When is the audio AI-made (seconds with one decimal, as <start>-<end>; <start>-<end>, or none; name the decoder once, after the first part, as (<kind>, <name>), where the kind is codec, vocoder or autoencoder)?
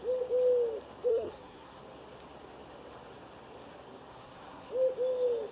1.1-1.8 (codec, SNAC); 4.1-4.7